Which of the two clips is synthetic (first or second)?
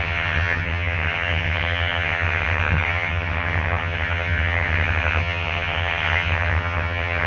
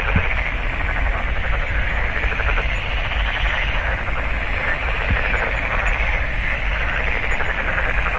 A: first